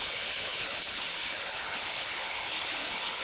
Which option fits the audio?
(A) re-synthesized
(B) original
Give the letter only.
A